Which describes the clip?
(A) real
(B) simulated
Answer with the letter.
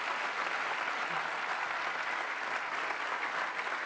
A